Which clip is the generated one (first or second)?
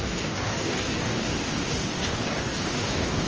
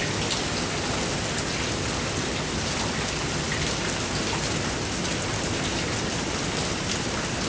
first